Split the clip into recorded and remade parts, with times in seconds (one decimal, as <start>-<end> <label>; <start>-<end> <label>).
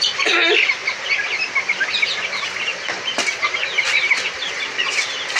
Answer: 0.0-2.7 recorded; 2.7-4.6 remade; 4.6-5.4 recorded